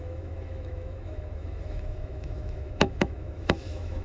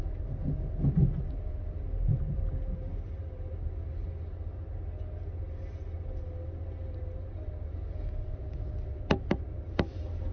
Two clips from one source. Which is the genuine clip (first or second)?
second